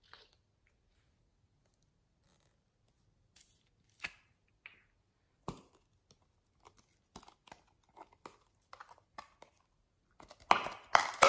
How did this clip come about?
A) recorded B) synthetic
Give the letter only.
A